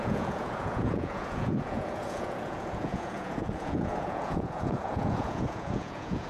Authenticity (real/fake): fake